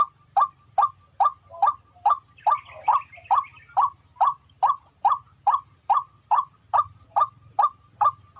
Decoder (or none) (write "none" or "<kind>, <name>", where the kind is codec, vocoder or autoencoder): none